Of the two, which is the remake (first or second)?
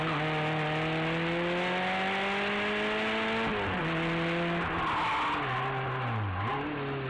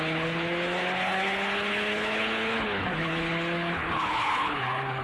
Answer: second